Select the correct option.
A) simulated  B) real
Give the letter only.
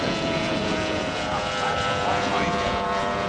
A